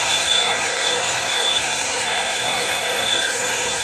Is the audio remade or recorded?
remade